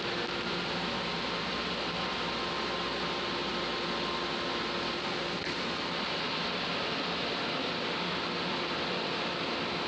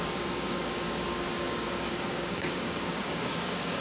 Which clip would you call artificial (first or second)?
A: second